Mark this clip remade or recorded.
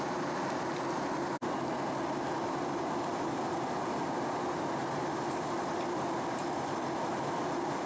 recorded